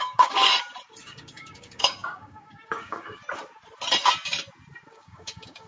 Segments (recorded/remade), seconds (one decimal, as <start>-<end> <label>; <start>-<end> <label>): 0.0-0.5 remade; 0.5-1.0 recorded; 1.0-3.2 remade; 3.2-4.9 recorded; 4.9-5.7 remade